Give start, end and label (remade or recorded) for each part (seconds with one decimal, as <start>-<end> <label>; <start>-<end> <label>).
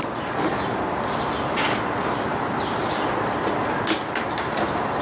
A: 0.0-5.0 recorded